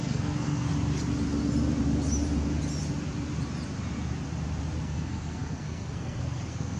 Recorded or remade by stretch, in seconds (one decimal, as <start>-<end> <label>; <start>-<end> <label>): 0.0-0.7 remade; 0.7-4.8 recorded; 4.8-6.8 remade